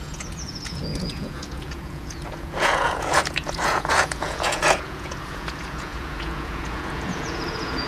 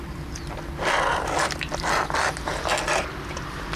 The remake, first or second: first